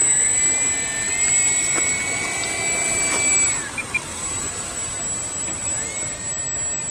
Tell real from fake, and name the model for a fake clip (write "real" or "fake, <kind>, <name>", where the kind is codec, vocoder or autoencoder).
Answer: real